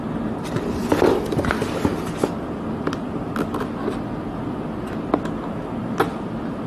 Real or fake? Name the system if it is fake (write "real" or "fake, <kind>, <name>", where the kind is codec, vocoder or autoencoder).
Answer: real